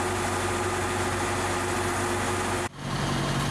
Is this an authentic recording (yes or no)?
yes